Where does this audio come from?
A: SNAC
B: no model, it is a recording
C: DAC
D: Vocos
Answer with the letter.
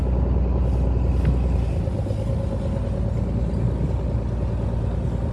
B